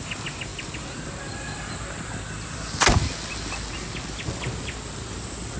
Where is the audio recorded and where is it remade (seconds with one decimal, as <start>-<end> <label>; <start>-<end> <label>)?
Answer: 0.0-5.6 recorded